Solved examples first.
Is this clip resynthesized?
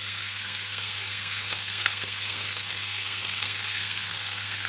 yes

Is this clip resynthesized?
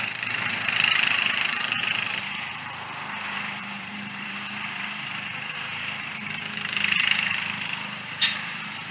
yes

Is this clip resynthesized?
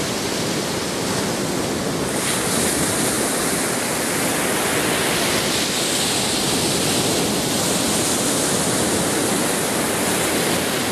no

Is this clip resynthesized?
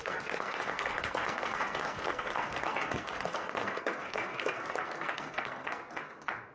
yes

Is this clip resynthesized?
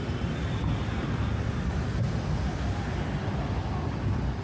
no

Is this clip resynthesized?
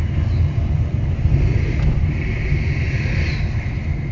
no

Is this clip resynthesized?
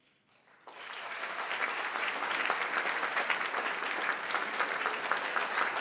no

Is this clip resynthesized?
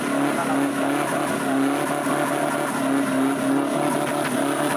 no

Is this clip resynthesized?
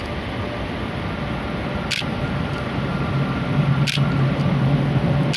no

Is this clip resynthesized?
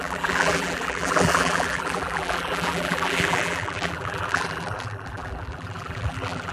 yes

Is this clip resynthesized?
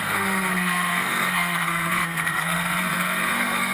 yes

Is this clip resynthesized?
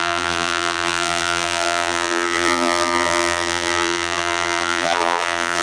yes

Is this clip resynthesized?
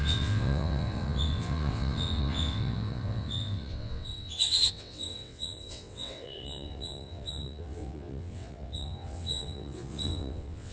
yes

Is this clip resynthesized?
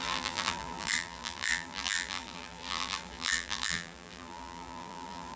yes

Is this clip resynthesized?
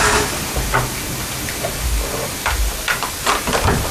no